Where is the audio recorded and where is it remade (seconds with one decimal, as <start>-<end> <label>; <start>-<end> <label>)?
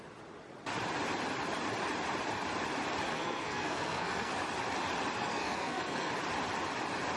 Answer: 0.0-3.1 recorded; 3.1-4.3 remade; 4.3-5.2 recorded; 5.2-6.1 remade; 6.1-7.2 recorded